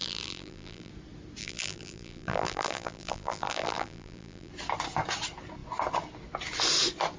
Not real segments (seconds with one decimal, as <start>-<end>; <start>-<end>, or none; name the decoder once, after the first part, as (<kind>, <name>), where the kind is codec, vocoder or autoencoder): 0.0-0.9 (vocoder, BigVGAN v2); 1.4-4.5